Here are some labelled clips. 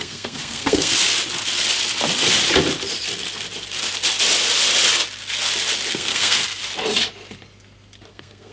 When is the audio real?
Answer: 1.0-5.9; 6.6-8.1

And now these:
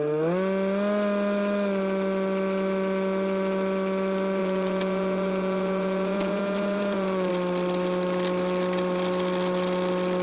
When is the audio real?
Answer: 0.0-4.4; 7.3-10.2

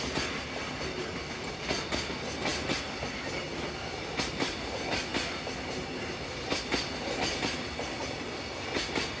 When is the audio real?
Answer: 0.0-9.2

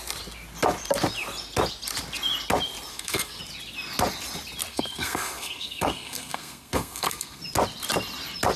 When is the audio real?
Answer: 0.0-2.9; 3.4-4.7; 7.4-8.6